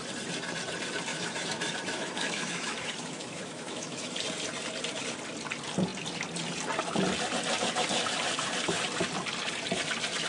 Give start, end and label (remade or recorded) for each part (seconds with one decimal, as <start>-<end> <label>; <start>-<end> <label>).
0.0-1.1 recorded; 1.1-4.1 remade; 4.1-10.3 recorded